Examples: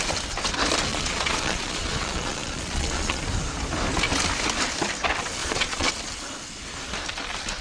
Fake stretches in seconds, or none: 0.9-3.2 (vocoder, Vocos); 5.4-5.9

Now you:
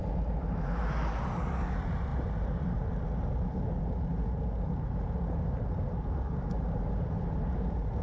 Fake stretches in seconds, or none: none

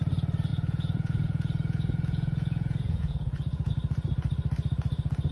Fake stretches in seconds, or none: 0.5-3.7 (vocoder, Vocos)

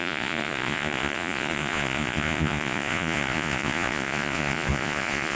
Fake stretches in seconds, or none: 0.0-5.4 (vocoder, Vocos)

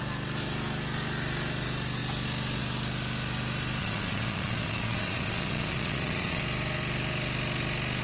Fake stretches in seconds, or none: 3.8-6.4 (vocoder, Vocos)